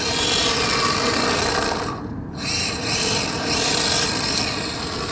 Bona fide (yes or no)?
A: yes